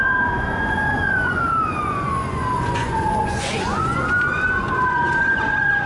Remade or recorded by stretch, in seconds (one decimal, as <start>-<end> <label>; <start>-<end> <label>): 0.0-5.9 remade